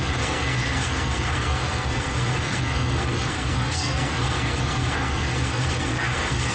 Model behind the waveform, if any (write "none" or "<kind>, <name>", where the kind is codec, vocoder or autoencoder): codec, SNAC